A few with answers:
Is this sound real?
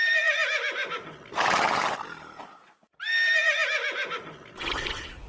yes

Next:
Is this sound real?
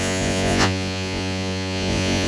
no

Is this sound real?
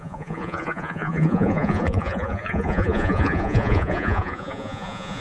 no